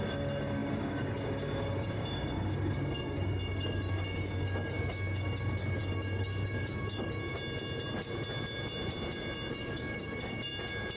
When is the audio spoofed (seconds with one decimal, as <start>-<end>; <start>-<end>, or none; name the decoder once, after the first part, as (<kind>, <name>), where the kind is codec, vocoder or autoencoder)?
0.0-7.2 (codec, DAC); 9.5-10.5